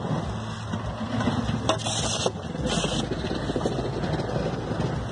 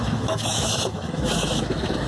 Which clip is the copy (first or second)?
second